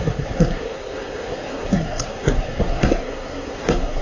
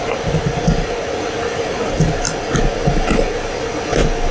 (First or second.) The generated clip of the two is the first